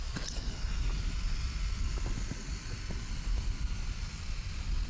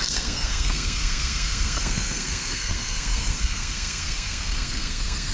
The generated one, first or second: second